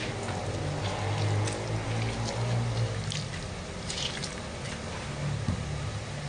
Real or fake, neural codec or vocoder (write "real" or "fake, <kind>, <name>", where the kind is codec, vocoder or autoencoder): real